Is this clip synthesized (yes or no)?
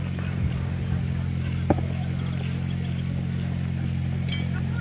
no